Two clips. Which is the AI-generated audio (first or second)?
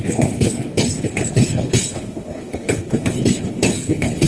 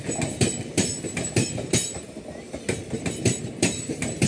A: first